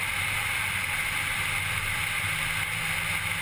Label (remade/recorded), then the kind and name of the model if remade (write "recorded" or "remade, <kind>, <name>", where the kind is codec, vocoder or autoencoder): recorded